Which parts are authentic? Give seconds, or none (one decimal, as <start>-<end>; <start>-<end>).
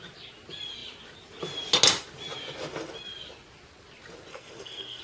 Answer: 0.0-4.3